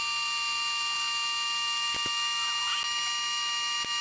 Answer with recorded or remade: recorded